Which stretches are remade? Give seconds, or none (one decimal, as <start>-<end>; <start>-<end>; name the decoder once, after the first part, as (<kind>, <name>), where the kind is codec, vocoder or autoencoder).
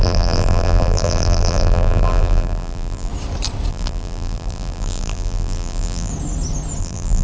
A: 0.0-3.1 (vocoder, BigVGAN v2); 3.7-6.1; 6.8-7.2